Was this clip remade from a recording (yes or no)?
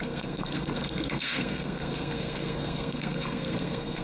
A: yes